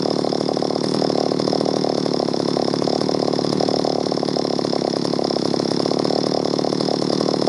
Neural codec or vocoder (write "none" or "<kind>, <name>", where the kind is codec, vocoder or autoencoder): autoencoder, DAC-VAE